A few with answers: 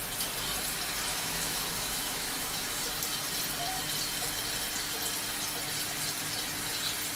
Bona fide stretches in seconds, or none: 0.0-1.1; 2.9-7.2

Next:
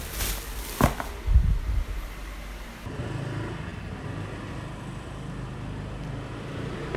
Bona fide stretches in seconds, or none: 0.0-7.0

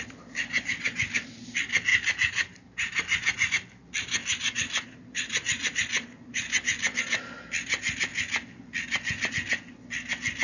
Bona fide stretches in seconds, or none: 0.0-1.9; 3.5-4.2; 7.0-10.4

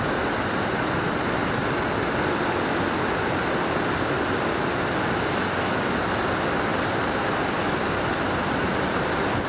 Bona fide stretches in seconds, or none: 0.0-9.5

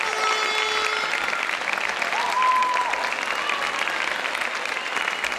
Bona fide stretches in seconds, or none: 0.0-5.4